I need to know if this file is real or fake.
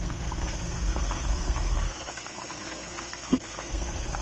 fake